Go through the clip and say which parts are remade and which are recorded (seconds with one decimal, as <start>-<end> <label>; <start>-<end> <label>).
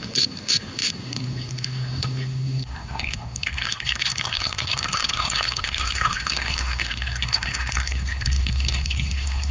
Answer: 0.0-9.5 remade